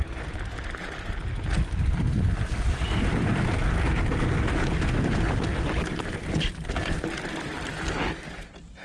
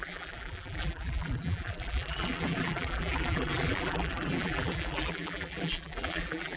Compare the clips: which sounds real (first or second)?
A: first